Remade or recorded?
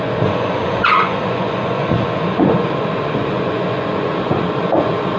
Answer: remade